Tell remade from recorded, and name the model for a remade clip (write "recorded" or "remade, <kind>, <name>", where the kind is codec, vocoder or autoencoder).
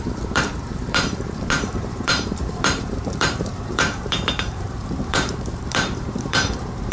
remade, vocoder, BigVGAN v2